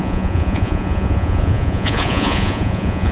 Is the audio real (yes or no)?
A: no